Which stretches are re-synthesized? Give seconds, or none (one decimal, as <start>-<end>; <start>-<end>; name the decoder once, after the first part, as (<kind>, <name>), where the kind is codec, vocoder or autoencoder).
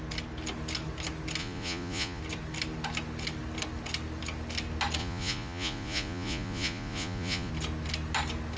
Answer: 1.4-2.2 (vocoder, Vocos); 5.0-7.5